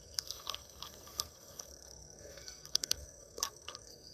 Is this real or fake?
fake